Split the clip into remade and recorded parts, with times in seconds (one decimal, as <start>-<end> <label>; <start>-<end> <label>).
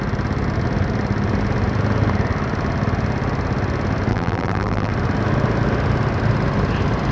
0.0-4.1 recorded; 4.1-4.9 remade; 4.9-7.1 recorded